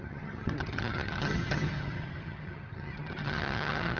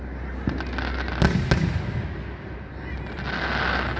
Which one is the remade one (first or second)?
first